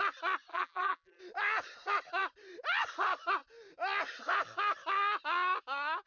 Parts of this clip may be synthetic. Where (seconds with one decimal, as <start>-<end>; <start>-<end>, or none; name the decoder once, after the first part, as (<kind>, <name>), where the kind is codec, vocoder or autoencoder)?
0.5-1.2 (vocoder, BigVGAN v2)